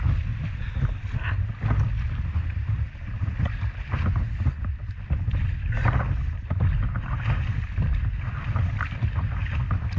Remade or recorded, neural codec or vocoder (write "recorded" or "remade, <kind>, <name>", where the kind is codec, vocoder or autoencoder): recorded